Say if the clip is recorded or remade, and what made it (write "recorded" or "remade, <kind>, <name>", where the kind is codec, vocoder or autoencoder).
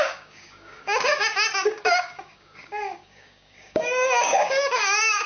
remade, codec, DAC